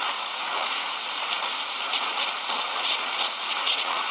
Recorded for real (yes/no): no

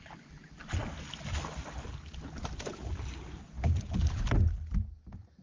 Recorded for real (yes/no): yes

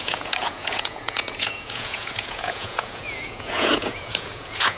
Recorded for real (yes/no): no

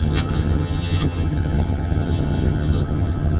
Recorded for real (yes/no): no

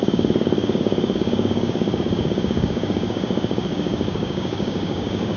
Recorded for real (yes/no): no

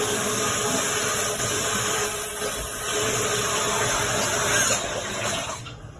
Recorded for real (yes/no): yes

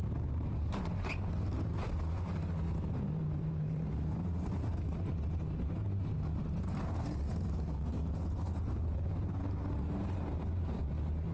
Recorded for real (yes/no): no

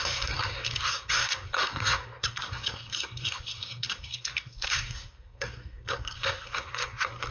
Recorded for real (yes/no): no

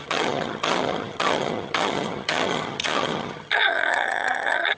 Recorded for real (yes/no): no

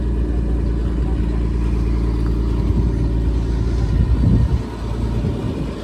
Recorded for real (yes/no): yes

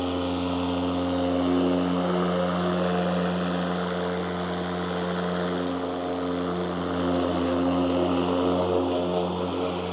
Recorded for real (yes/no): yes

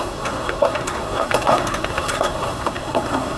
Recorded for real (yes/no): no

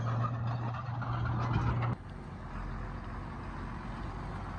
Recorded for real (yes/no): yes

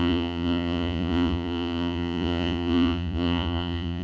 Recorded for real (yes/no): no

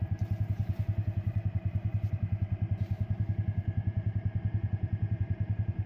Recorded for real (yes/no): no